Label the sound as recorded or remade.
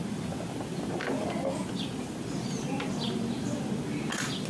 recorded